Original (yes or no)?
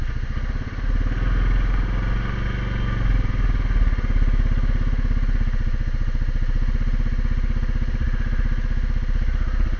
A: yes